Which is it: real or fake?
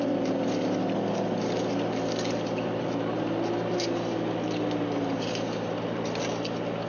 real